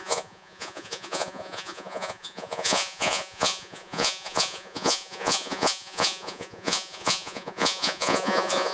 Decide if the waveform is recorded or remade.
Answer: remade